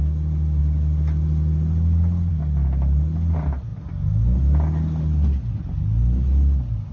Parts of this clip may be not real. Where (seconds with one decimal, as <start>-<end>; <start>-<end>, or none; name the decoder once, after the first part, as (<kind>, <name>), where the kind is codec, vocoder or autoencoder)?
none